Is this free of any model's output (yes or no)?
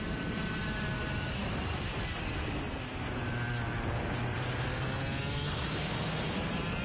yes